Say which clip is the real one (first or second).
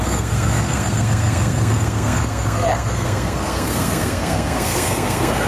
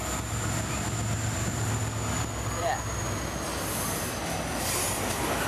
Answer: second